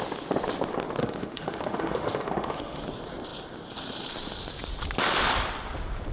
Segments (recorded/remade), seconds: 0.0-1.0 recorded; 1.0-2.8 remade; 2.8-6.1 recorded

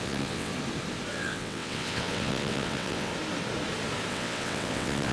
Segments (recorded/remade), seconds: 0.0-0.5 remade; 0.5-1.1 recorded; 1.1-3.1 remade; 3.1-4.1 recorded; 4.1-5.1 remade

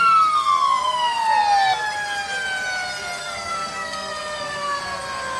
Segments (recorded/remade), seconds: 0.0-3.2 recorded; 3.2-4.8 remade; 4.8-5.4 recorded

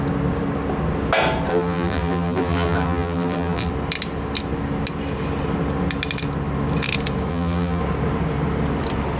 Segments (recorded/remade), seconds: 0.0-1.5 recorded; 1.5-3.7 remade; 3.7-7.3 recorded; 7.3-7.8 remade; 7.8-9.2 recorded

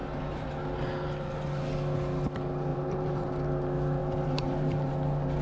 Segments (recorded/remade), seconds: 0.0-2.7 recorded; 2.7-3.3 remade; 3.3-4.0 recorded; 4.0-4.9 remade; 4.9-5.4 recorded

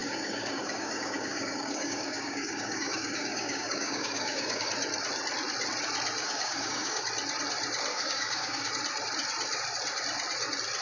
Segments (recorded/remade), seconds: 0.0-4.7 remade; 4.7-6.2 recorded; 6.2-7.0 remade; 7.0-7.9 recorded; 7.9-8.7 remade; 8.7-10.8 recorded

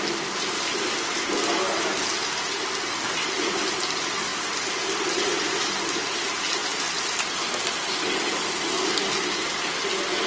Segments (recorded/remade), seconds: 0.0-10.3 recorded

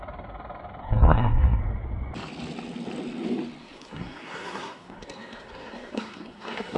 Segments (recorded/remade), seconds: 0.0-0.8 recorded; 0.8-1.6 remade; 1.6-3.6 recorded; 3.6-6.8 remade